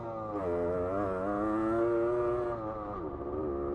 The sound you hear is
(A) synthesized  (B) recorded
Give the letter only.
B